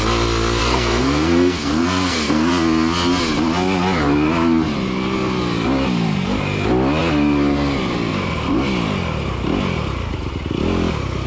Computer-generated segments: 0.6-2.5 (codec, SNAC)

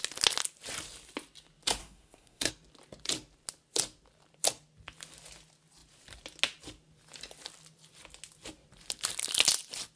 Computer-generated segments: 1.8-2.5 (codec, SNAC)

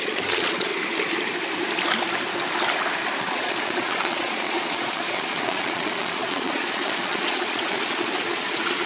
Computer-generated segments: 0.0-0.7 (vocoder, Vocos); 3.2-8.9